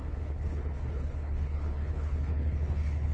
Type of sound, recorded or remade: remade